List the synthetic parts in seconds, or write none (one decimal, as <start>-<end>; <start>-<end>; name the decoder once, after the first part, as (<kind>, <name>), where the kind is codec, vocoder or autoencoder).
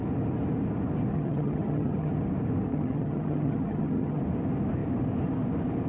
1.1-2.1 (vocoder, HiFi-GAN); 2.7-4.2